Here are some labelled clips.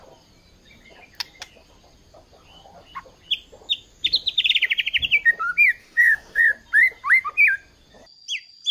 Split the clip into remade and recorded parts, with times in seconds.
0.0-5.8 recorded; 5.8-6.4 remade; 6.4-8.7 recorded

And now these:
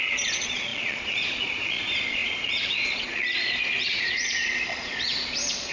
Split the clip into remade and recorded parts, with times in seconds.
0.0-5.7 remade

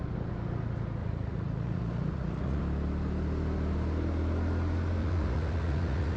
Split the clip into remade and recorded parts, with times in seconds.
0.0-1.0 recorded; 1.0-2.6 remade; 2.6-5.0 recorded; 5.0-6.2 remade